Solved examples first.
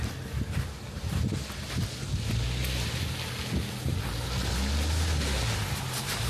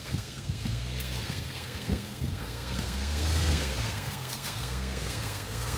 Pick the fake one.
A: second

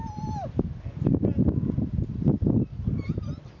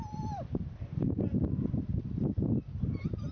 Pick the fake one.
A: second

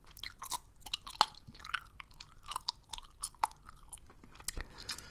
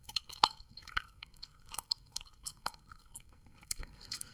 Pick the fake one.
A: second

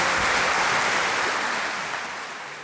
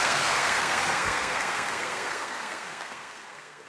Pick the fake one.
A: second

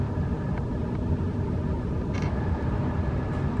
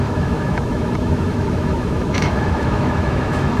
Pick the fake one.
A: second